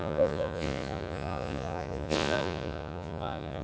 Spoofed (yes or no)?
yes